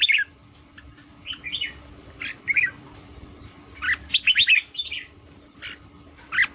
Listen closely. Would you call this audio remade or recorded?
recorded